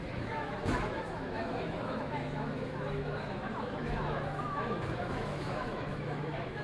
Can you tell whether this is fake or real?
fake